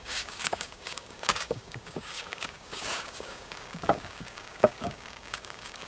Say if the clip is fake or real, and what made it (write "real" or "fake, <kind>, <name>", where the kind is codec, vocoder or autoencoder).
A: fake, codec, DAC